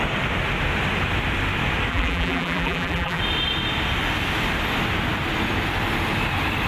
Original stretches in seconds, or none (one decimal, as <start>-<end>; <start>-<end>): 0.0-1.9; 3.2-6.7